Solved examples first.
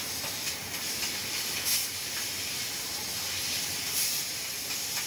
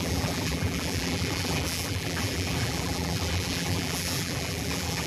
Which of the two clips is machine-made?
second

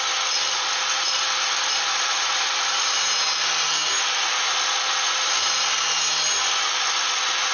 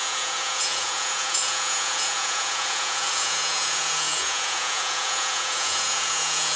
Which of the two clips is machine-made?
second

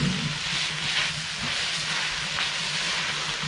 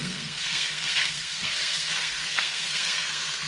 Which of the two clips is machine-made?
second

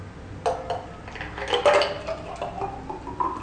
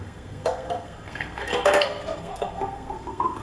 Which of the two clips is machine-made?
second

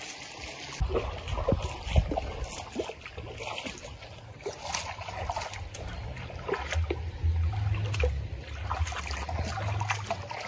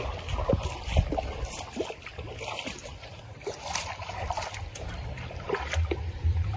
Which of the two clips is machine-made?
second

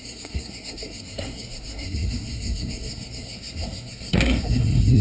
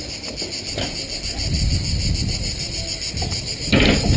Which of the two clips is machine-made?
first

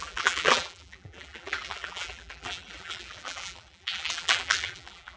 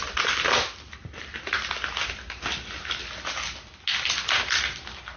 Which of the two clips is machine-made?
first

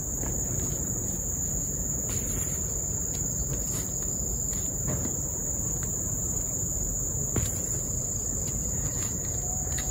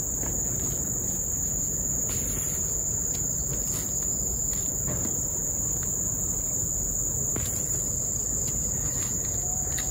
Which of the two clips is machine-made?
first